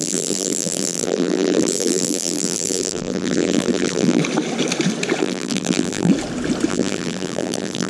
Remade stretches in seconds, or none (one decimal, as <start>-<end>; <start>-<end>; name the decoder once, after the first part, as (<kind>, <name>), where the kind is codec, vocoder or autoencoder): 0.0-4.2 (vocoder, BigVGAN v2); 5.2-6.1; 6.7-7.9